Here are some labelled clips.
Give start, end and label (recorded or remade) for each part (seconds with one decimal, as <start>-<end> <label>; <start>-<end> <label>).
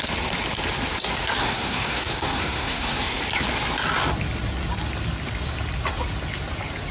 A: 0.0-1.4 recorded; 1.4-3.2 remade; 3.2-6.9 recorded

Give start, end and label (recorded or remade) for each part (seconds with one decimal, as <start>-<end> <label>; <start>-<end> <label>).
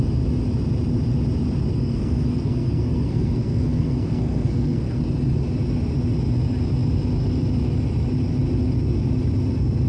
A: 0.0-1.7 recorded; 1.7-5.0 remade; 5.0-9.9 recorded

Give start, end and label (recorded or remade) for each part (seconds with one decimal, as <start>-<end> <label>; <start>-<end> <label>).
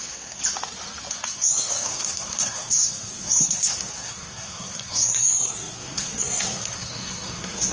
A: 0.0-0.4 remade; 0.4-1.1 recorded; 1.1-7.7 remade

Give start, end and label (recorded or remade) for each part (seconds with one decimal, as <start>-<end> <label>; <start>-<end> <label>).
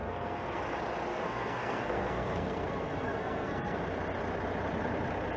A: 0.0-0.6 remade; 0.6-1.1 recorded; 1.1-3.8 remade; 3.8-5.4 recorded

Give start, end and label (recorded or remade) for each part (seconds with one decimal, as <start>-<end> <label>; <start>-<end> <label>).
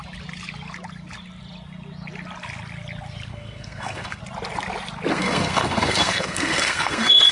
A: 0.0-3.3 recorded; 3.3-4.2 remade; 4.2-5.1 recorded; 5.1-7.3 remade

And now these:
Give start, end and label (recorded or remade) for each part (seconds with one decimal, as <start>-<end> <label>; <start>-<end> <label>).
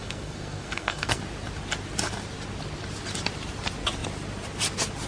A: 0.0-1.2 remade; 1.2-5.1 recorded